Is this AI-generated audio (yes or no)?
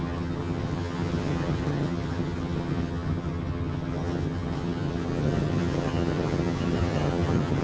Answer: yes